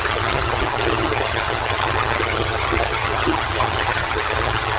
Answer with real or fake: fake